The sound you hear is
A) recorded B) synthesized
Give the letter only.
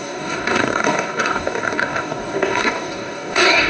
B